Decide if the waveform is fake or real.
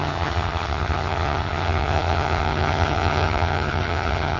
fake